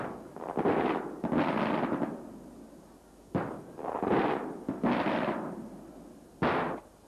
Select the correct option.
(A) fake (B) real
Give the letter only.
B